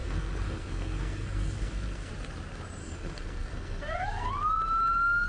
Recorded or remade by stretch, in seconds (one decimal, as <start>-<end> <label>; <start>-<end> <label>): 0.0-2.1 remade; 2.1-2.8 recorded; 2.8-4.3 remade; 4.3-5.3 recorded